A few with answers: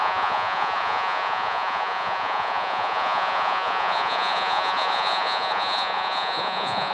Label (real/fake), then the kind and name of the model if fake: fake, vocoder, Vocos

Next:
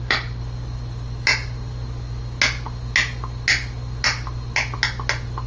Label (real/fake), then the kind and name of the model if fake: real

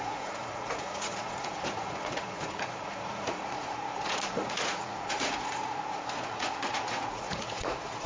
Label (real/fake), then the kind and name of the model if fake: fake, vocoder, Vocos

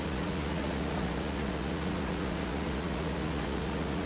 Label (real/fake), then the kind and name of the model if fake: fake, vocoder, Vocos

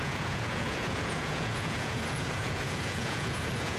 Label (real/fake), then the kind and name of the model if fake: fake, vocoder, Vocos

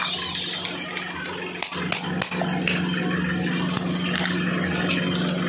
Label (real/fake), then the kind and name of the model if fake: real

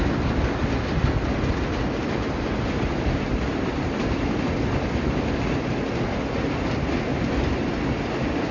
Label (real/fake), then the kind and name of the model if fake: real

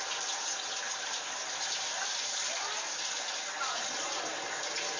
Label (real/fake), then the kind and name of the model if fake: real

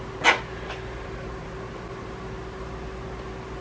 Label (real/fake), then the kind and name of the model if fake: real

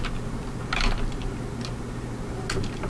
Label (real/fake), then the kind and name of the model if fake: real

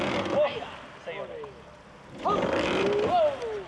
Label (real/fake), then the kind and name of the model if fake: real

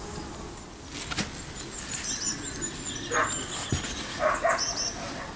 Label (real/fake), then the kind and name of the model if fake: real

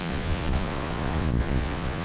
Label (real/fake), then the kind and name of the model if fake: fake, vocoder, Vocos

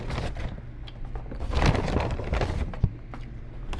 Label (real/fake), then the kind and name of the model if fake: real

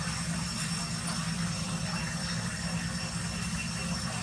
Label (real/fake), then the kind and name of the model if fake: real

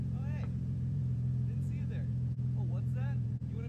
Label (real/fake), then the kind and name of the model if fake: fake, vocoder, Vocos